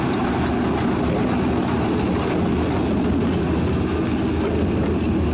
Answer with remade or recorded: recorded